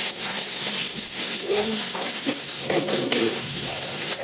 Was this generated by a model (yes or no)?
yes